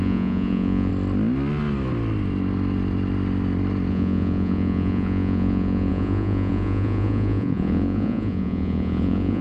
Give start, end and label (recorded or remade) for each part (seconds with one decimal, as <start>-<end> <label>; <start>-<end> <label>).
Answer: 0.0-0.9 remade; 0.9-3.9 recorded; 3.9-9.4 remade